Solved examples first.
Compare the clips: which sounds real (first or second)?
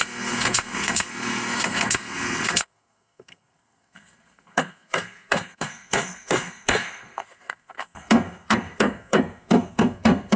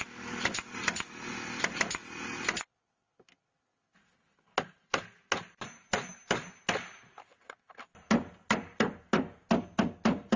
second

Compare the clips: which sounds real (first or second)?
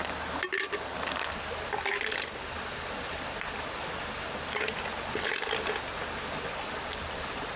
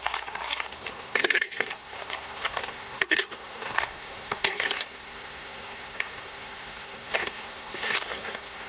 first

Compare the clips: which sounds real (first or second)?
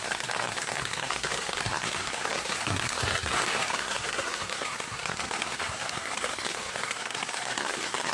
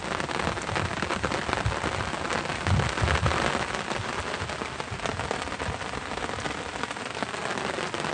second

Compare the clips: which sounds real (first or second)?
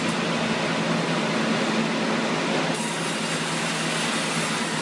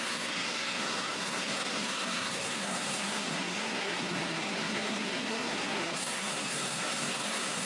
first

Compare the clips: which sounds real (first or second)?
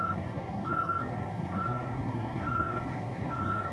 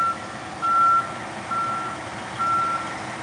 second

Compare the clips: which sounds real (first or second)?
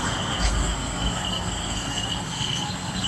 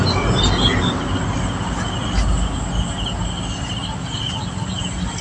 second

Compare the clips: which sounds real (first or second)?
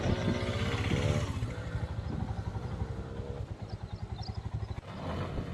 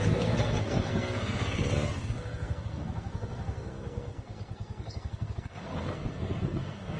first